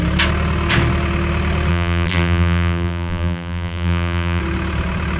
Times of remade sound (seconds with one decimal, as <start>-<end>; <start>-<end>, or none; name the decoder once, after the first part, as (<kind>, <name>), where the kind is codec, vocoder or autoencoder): 1.7-4.4 (vocoder, BigVGAN v2)